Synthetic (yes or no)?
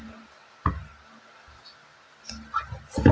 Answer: no